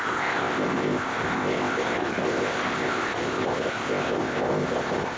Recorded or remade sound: remade